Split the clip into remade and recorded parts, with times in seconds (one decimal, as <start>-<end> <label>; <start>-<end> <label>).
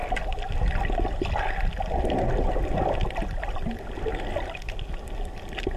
0.0-5.8 recorded